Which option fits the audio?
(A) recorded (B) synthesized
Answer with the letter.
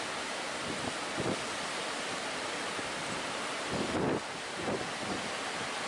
A